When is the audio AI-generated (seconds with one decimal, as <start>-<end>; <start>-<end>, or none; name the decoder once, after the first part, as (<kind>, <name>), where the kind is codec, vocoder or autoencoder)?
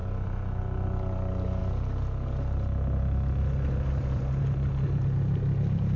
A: none